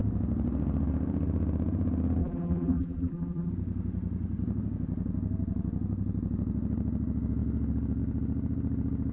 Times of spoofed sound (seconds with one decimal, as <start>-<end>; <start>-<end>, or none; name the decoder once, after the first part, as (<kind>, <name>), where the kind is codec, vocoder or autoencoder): 2.2-3.5 (vocoder, BigVGAN v2)